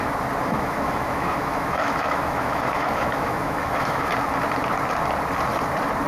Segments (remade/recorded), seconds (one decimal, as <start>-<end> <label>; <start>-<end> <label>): 0.0-0.4 recorded; 0.4-4.1 remade; 4.1-6.1 recorded

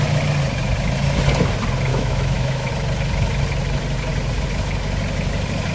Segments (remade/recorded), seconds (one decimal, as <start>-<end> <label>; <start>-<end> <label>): 0.0-1.9 recorded; 1.9-2.7 remade; 2.7-5.7 recorded

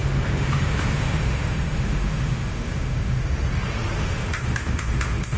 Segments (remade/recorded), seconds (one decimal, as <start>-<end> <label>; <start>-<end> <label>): 0.0-3.2 remade; 3.2-4.0 recorded; 4.0-5.4 remade

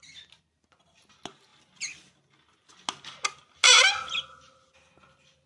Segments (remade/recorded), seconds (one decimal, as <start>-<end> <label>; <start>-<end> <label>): 0.0-5.5 recorded

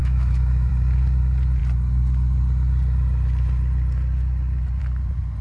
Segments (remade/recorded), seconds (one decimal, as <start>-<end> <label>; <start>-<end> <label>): 0.0-0.7 remade; 0.7-5.4 recorded

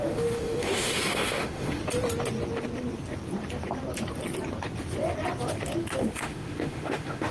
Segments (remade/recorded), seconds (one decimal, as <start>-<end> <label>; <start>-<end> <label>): 0.0-1.8 remade; 1.8-6.0 recorded; 6.0-7.3 remade

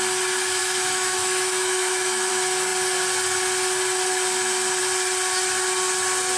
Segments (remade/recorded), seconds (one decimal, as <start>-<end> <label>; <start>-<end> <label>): 0.0-0.6 recorded; 0.6-2.3 remade; 2.3-6.4 recorded

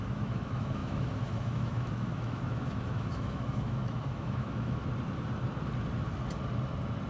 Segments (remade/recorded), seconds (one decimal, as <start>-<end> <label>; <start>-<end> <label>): 0.0-4.8 remade; 4.8-7.1 recorded